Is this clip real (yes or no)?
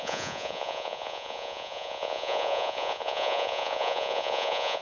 no